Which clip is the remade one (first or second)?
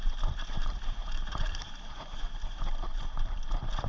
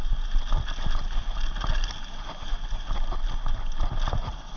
first